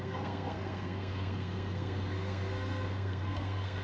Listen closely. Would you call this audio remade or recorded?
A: remade